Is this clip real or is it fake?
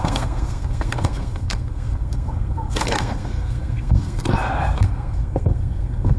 fake